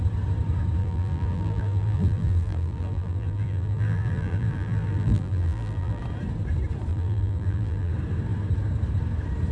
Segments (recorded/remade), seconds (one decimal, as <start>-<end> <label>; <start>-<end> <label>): 0.0-0.8 recorded; 0.8-6.0 remade; 6.0-6.9 recorded; 6.9-7.9 remade; 7.9-9.5 recorded